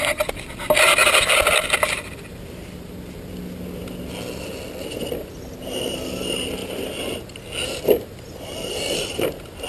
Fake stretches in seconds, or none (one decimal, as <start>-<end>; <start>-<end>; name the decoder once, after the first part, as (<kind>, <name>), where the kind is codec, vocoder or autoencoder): none